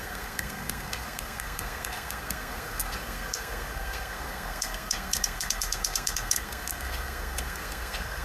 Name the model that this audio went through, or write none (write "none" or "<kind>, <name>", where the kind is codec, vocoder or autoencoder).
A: codec, SNAC